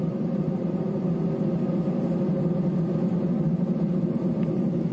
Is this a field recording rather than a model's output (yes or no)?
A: yes